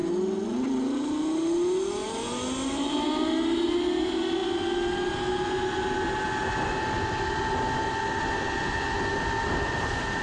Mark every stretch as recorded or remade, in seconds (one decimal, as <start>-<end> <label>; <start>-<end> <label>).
0.0-9.1 recorded; 9.1-10.2 remade